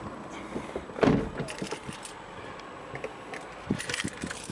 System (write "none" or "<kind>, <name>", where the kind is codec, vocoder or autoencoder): none